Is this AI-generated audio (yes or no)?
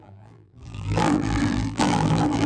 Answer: yes